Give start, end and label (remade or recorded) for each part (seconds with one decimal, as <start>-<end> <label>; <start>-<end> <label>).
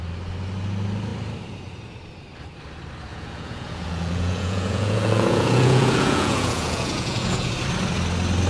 0.0-3.1 recorded; 3.1-7.5 remade; 7.5-8.5 recorded